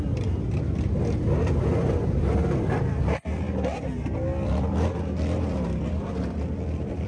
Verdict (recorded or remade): remade